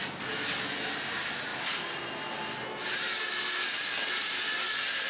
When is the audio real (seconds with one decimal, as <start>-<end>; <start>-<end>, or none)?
0.0-5.1